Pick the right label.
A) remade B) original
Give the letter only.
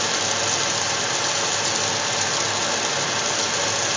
B